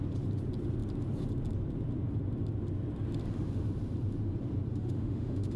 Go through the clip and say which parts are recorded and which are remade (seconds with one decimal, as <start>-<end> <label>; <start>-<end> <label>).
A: 0.0-4.7 recorded; 4.7-5.6 remade